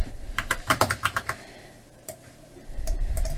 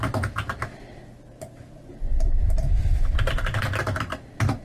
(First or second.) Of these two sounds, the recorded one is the second